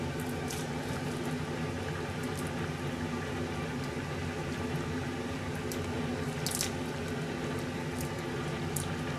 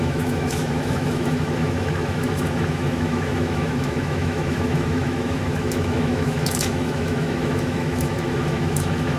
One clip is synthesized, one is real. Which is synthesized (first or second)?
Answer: second